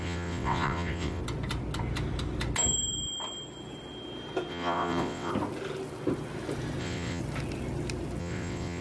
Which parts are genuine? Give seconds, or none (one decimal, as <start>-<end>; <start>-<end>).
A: 1.2-4.5; 5.3-6.8; 7.2-8.2